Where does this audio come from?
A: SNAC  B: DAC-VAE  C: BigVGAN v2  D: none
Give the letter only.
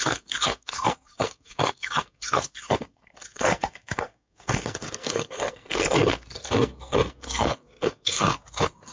A